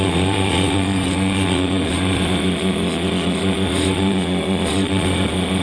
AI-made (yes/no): yes